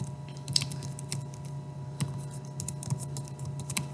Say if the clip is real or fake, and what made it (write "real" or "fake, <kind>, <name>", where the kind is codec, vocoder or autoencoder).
real